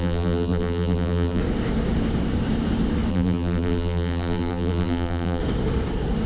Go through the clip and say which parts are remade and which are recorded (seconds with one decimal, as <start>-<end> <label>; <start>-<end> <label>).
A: 0.0-1.4 remade; 1.4-3.1 recorded; 3.1-5.4 remade; 5.4-6.3 recorded